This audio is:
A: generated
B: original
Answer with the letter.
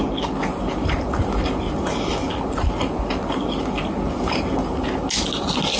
B